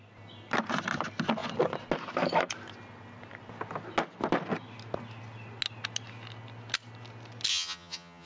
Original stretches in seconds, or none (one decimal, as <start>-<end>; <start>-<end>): 0.0-7.5